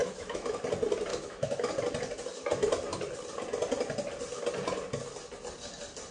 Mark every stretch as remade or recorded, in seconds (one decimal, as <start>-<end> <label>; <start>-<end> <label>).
0.0-0.6 remade; 0.6-1.1 recorded; 1.1-1.7 remade; 1.7-6.1 recorded